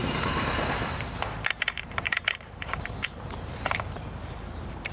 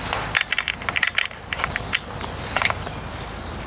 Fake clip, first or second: first